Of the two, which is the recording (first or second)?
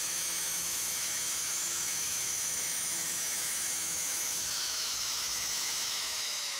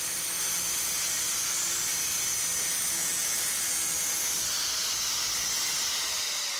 second